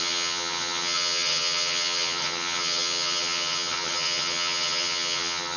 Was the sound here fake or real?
fake